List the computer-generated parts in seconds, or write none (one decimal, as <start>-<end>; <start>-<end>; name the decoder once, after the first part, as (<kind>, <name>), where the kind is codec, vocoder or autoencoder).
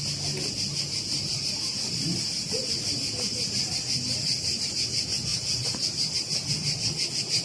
none